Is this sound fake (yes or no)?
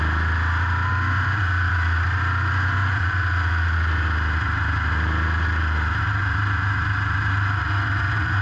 no